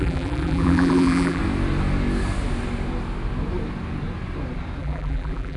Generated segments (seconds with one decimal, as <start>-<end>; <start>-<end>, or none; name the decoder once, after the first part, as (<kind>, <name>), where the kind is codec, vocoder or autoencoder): 0.0-1.4 (vocoder, BigVGAN v2); 4.8-5.6